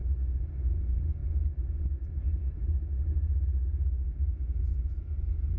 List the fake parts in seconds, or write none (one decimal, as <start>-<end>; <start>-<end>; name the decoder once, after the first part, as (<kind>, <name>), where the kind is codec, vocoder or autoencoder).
none

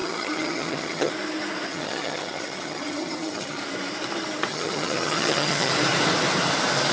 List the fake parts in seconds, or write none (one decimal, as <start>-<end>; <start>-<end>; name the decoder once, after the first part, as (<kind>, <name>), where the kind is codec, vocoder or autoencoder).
0.0-1.1 (vocoder, HiFi-GAN); 1.7-3.6; 4.5-5.7

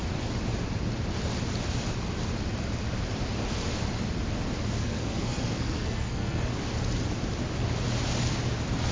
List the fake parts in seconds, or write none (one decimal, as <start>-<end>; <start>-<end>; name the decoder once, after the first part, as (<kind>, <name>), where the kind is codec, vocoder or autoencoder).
4.8-6.5 (codec, SNAC)

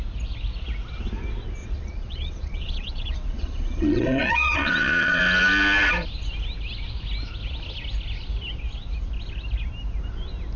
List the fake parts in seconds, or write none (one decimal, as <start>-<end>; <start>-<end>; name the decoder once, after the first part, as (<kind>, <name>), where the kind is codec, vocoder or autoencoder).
1.6-5.2 (vocoder, Vocos)

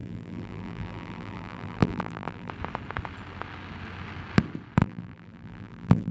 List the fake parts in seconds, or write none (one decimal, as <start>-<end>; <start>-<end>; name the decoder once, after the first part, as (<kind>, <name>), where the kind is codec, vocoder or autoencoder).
0.0-2.5 (vocoder, BigVGAN v2); 4.8-6.1

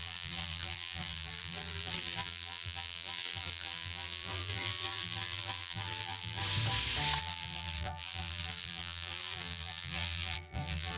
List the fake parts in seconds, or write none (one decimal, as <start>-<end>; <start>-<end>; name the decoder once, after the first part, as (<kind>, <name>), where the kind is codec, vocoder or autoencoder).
0.0-6.4 (vocoder, BigVGAN v2); 7.2-11.0

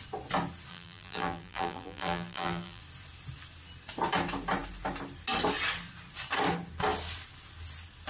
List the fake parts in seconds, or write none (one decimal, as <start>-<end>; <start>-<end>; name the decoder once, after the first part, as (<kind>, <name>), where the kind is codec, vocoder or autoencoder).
0.7-2.8 (vocoder, BigVGAN v2)